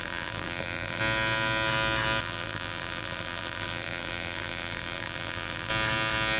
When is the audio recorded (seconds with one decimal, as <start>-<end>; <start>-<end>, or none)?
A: 1.0-2.2; 5.7-6.4